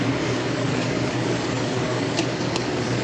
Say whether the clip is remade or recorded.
remade